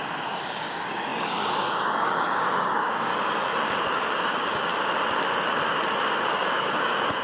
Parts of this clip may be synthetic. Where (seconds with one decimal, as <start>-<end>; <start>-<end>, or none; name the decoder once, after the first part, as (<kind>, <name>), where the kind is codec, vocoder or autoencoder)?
0.0-3.1 (codec, DAC); 3.8-4.7; 6.3-7.2